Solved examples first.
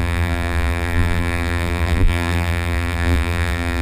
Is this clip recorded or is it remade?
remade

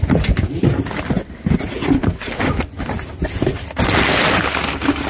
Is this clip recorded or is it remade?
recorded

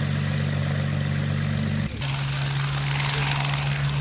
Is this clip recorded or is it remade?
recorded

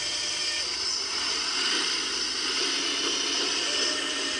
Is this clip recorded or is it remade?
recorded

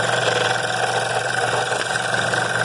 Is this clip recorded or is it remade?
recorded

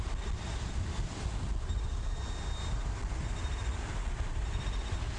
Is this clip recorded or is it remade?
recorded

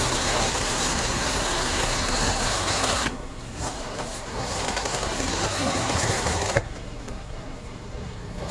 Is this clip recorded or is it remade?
remade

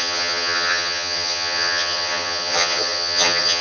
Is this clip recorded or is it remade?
remade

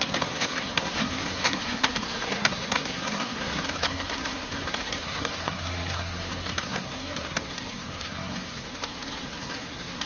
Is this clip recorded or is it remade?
remade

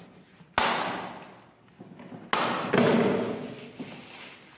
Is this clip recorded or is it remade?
recorded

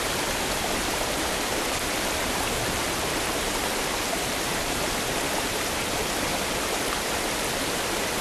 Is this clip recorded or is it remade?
remade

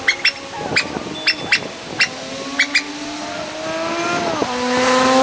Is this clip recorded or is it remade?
recorded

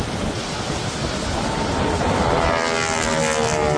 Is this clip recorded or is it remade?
recorded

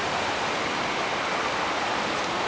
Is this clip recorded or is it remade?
recorded